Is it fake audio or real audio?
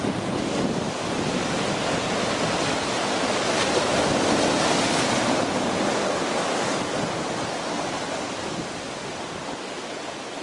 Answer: real